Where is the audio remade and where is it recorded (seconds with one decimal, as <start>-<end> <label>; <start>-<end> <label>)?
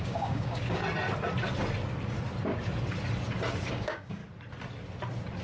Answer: 0.0-0.8 remade; 0.8-3.7 recorded; 3.7-4.2 remade; 4.2-5.4 recorded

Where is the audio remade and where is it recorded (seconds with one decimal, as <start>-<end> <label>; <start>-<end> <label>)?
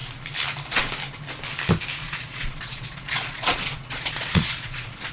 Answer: 0.0-2.0 recorded; 2.0-5.1 remade